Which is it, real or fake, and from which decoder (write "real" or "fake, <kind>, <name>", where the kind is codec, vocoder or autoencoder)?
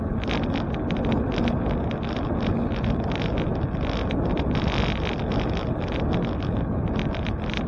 real